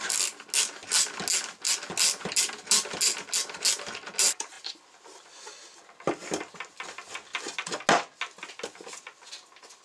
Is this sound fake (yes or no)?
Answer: no